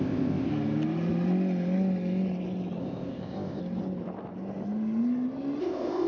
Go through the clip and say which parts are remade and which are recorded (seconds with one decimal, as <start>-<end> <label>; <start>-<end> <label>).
0.0-0.5 remade; 0.5-2.8 recorded; 2.8-3.6 remade; 3.6-5.6 recorded; 5.6-6.1 remade